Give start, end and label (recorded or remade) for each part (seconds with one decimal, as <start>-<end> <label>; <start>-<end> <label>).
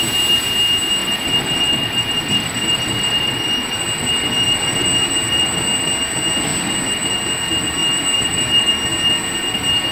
0.0-1.0 recorded; 1.0-5.4 remade; 5.4-6.5 recorded; 6.5-7.1 remade; 7.1-7.8 recorded; 7.8-8.7 remade; 8.7-9.9 recorded